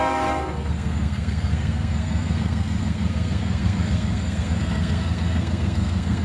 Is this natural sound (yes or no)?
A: no